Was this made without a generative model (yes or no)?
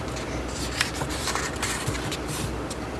yes